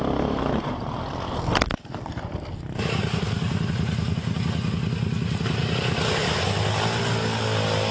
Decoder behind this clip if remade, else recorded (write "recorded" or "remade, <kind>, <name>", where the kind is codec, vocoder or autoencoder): recorded